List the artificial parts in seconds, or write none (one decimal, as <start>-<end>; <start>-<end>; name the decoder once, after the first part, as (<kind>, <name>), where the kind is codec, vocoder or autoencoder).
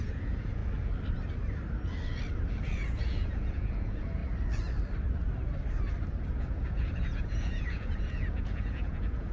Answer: 0.0-0.6 (vocoder, Vocos); 2.5-4.2; 6.4-9.3